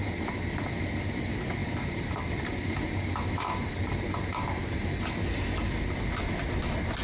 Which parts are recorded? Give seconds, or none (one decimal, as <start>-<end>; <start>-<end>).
0.0-1.6; 5.7-7.0